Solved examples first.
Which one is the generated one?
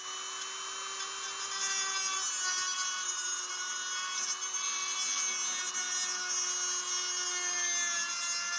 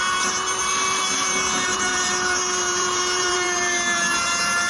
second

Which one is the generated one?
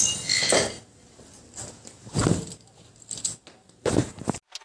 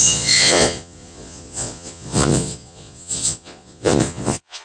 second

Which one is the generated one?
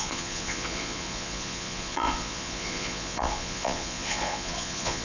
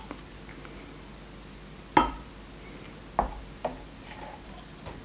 first